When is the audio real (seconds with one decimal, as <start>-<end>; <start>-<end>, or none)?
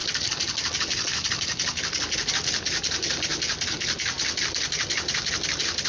0.0-5.9